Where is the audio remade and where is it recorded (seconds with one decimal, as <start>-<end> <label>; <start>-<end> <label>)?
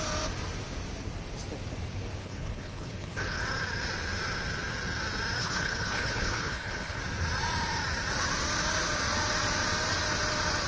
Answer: 0.0-2.2 recorded; 2.2-3.4 remade; 3.4-5.4 recorded; 5.4-7.0 remade; 7.0-10.7 recorded